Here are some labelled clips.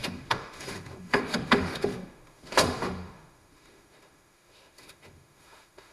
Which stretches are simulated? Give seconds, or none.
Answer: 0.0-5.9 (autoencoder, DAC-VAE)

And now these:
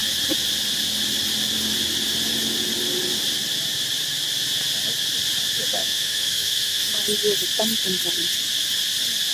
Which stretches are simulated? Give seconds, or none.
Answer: 5.8-6.9 (autoencoder, DAC-VAE)

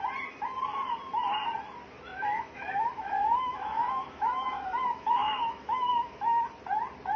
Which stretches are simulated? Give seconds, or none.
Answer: 2.1-6.4 (autoencoder, DAC-VAE)

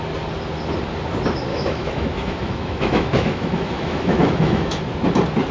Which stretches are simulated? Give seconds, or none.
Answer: 1.5-4.8 (autoencoder, DAC-VAE)

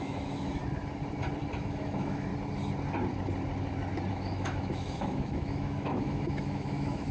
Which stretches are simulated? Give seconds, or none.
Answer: 0.0-0.6 (autoencoder, DAC-VAE); 1.6-2.3; 4.1-7.1

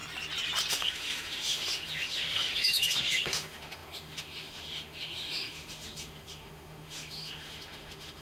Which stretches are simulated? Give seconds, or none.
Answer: 0.7-8.2 (autoencoder, DAC-VAE)

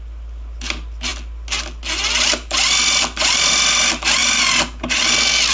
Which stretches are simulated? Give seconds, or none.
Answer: none